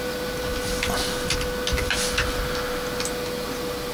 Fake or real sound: real